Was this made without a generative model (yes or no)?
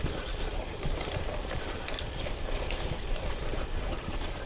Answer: no